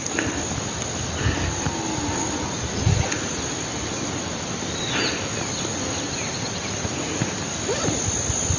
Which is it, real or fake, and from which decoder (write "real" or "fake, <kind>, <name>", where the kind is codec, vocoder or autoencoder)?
real